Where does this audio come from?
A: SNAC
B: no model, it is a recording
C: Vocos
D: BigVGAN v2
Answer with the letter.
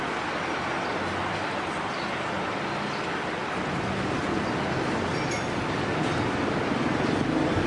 B